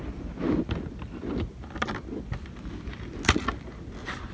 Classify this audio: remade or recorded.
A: recorded